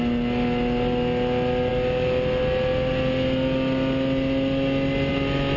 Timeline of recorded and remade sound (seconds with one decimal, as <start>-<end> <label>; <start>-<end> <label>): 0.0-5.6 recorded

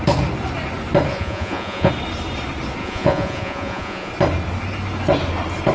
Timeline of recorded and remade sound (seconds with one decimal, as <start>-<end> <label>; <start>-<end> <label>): 0.0-1.1 recorded; 1.1-1.9 remade; 1.9-2.8 recorded; 2.8-4.1 remade; 4.1-5.7 recorded

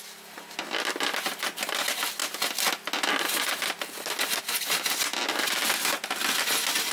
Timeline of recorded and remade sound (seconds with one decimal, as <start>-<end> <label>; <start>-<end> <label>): 0.0-6.9 recorded